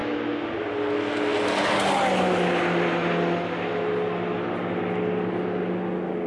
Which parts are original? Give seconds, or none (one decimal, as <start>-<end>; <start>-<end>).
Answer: 0.0-6.3